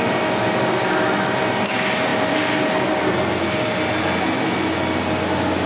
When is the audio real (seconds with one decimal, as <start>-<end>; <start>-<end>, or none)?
0.0-5.7